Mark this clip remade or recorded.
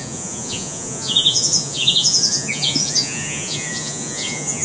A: remade